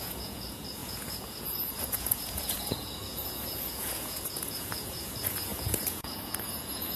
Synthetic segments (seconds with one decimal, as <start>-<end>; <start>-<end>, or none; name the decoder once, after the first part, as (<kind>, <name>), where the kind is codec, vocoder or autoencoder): 0.0-7.0 (vocoder, Vocos)